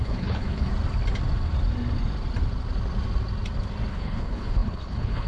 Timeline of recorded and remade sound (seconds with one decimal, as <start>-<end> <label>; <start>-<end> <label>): 0.0-0.7 remade; 0.7-3.9 recorded; 3.9-5.3 remade